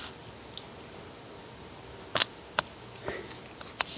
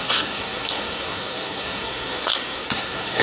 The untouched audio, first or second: first